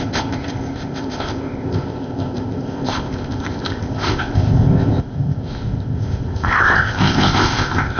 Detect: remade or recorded remade